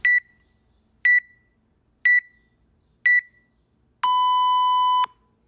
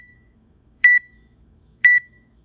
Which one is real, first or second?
first